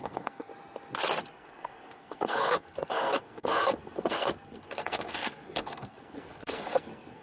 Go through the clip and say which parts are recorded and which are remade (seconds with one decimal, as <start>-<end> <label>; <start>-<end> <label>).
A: 0.0-0.5 remade; 0.5-1.3 recorded; 1.3-7.2 remade